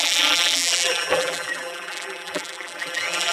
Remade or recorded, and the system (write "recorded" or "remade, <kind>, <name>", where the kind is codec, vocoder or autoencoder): remade, vocoder, BigVGAN v2